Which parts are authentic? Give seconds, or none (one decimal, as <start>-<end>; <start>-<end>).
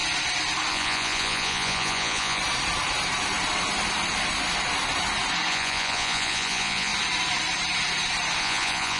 0.0-0.7; 2.4-5.5; 6.9-8.4